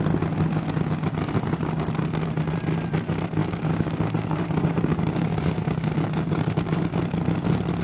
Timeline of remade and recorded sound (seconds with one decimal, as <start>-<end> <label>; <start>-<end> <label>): 0.0-3.4 recorded; 3.4-7.0 remade; 7.0-7.8 recorded